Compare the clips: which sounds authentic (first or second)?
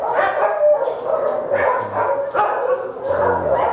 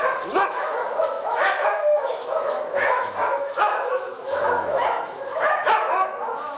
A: first